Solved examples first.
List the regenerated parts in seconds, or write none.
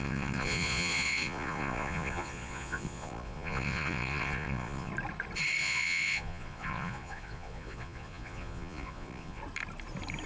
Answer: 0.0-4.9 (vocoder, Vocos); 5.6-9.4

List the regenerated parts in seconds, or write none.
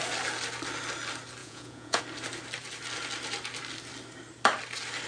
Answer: 1.4-2.0 (vocoder, Vocos)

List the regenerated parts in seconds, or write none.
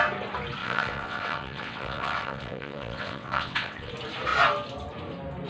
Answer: 0.6-3.9 (vocoder, WaveNeXt)